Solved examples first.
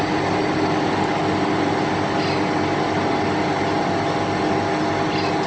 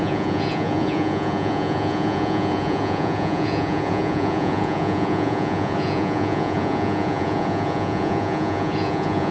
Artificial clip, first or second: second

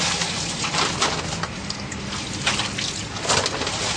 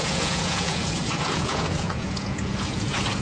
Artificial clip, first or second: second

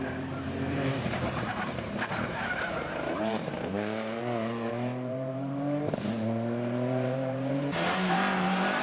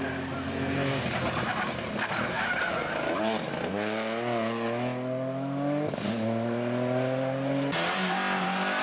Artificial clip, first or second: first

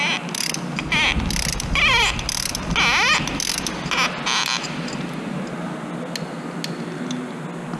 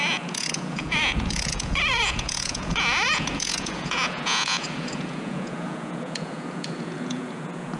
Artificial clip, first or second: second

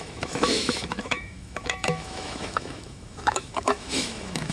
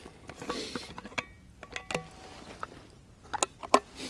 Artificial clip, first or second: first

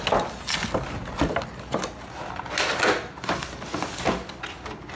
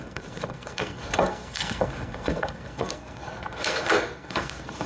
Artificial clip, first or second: second